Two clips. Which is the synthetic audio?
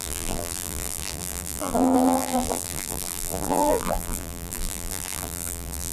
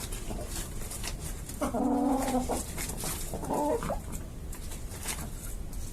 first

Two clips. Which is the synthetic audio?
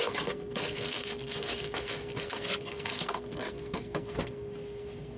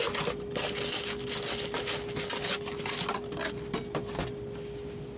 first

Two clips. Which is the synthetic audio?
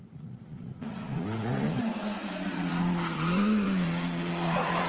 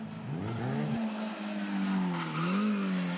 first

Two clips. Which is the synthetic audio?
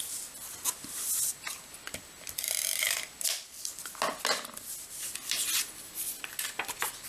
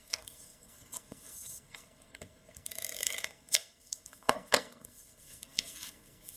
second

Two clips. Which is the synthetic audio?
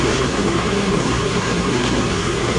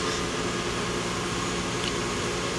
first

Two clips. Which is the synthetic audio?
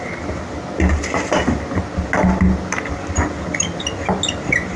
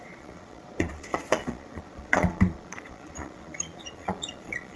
second